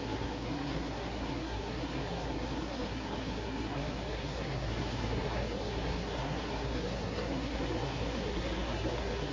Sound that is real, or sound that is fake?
fake